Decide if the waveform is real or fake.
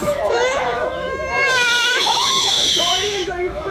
fake